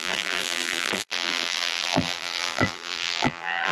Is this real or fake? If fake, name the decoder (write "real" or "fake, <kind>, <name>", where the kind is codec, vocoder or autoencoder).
fake, vocoder, BigVGAN v2